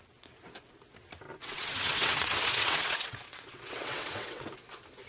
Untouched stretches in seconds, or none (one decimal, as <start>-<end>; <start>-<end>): 0.0-1.4; 4.5-5.1